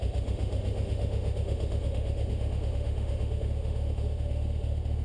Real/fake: fake